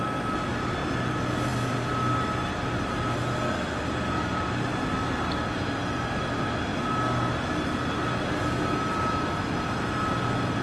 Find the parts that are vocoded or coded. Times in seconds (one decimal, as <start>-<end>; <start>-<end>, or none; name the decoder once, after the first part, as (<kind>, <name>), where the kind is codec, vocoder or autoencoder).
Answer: none